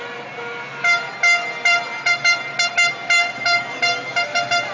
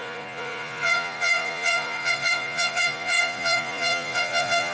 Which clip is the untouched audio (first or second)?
first